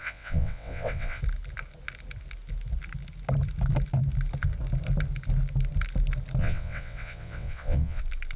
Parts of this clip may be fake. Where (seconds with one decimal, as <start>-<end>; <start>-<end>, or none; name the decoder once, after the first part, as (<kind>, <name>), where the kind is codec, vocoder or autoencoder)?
0.0-1.2 (vocoder, WaveNeXt); 6.4-8.0